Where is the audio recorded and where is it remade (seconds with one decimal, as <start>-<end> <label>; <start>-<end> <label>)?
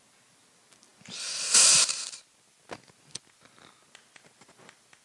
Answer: 0.0-5.0 recorded